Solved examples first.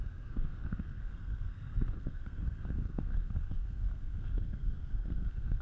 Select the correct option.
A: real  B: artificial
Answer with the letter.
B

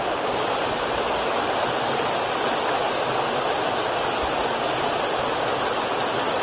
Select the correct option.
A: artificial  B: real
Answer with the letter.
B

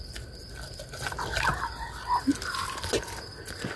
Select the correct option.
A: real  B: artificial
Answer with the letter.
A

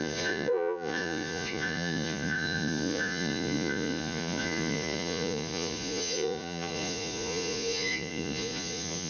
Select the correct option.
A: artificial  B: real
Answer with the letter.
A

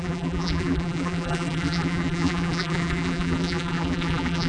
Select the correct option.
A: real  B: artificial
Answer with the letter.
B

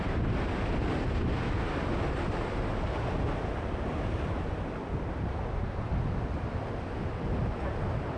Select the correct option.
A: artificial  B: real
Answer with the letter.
B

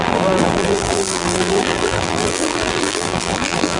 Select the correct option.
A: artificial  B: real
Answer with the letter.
A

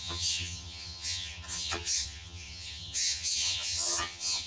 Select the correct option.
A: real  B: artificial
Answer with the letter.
B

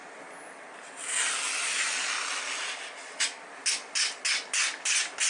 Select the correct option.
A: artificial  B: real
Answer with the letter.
B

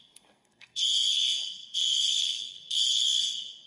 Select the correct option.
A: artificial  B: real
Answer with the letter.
A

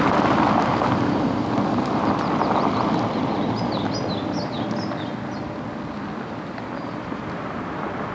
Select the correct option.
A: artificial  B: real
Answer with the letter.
B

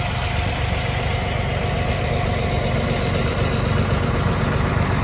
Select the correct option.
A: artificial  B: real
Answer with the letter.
B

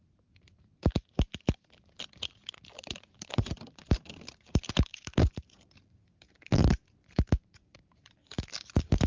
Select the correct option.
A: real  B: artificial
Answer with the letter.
B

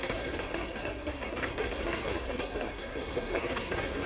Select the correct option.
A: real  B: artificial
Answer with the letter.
B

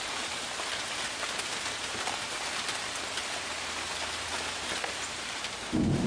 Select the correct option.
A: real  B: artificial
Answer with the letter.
A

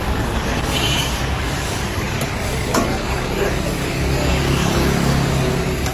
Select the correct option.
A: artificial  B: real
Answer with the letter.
A